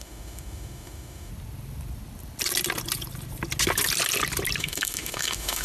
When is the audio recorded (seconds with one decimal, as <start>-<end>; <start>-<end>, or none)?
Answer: 1.3-4.6